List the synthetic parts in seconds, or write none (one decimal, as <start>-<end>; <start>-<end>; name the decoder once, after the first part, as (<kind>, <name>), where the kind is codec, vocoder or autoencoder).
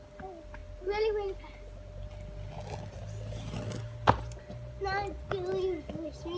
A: none